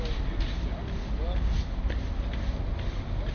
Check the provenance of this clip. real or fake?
real